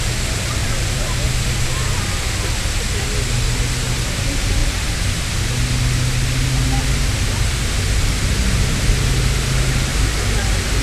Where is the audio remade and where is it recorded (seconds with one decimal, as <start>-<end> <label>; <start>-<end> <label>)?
0.0-0.6 recorded; 0.6-1.2 remade; 1.2-10.8 recorded